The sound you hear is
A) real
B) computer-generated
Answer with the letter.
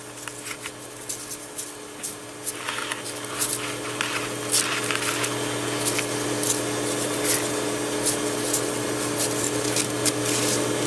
A